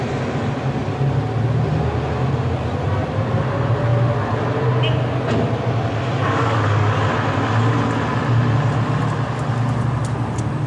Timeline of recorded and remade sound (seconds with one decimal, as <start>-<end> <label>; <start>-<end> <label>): 0.0-6.2 recorded; 6.2-7.0 remade; 7.0-10.7 recorded